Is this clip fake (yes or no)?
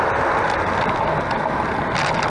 no